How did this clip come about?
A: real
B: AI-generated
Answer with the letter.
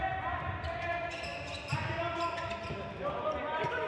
A